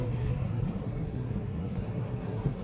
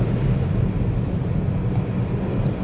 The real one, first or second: second